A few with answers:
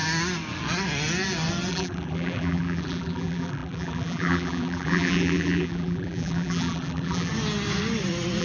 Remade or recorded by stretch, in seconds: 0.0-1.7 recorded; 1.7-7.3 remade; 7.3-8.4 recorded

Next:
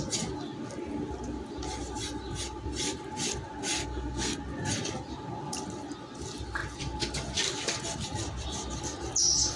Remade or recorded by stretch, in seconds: 0.0-3.8 recorded; 3.8-4.4 remade; 4.4-9.6 recorded